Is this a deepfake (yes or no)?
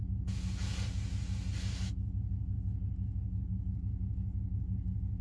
no